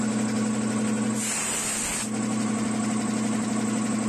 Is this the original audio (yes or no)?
yes